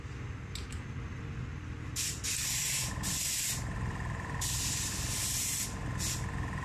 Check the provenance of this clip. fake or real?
real